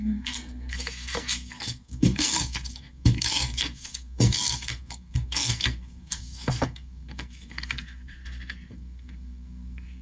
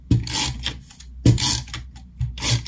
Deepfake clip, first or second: first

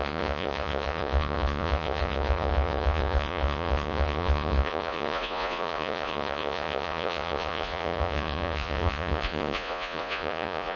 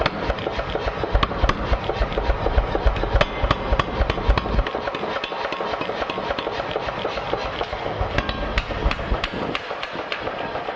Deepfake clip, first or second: first